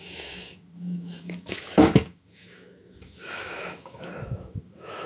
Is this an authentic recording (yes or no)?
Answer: no